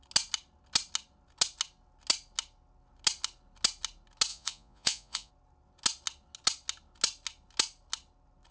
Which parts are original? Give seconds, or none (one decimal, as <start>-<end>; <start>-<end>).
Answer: 0.0-4.3; 5.3-8.5